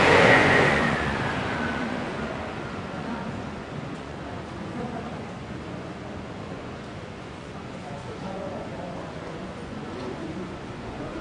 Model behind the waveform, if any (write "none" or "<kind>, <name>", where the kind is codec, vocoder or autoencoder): vocoder, Vocos